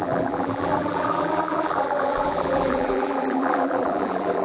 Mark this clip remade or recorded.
remade